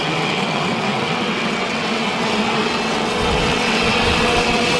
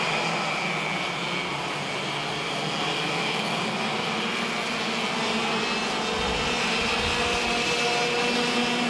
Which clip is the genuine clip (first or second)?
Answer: second